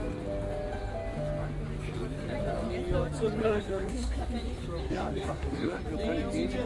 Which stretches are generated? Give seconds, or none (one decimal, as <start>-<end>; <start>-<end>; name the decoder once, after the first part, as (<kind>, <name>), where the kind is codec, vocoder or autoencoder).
3.4-4.2 (codec, SNAC); 4.8-5.8